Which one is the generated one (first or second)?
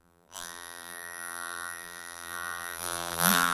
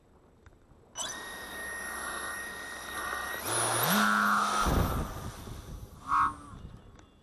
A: first